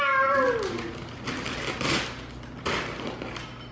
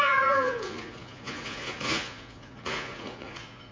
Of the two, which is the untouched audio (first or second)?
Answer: first